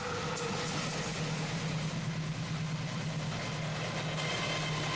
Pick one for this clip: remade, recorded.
recorded